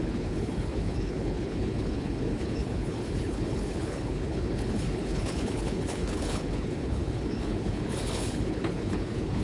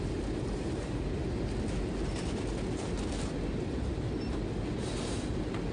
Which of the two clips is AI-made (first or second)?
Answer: first